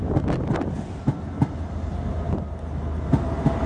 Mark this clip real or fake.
real